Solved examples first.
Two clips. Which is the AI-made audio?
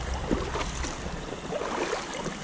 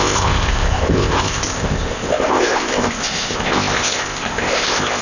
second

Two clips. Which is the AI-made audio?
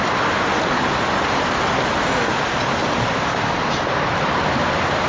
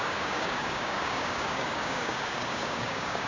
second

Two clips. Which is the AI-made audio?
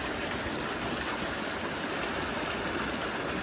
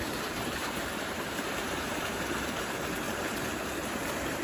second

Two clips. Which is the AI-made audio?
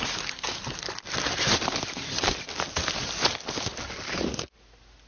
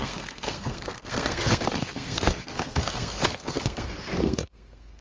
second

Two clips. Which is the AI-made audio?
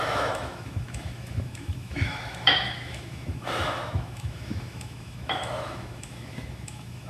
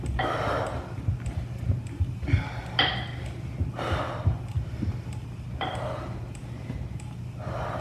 first